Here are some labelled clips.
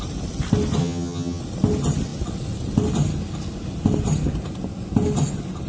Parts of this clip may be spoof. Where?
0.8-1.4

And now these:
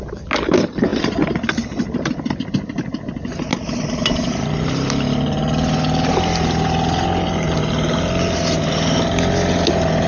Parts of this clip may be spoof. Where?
none